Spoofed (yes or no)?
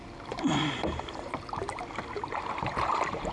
yes